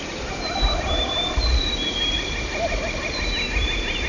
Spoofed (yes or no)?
no